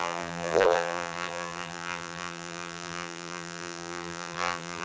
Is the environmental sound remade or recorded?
remade